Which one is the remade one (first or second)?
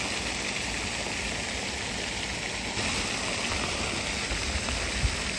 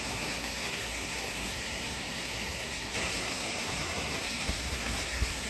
second